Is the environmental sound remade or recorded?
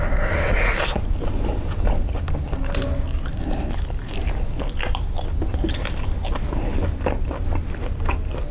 recorded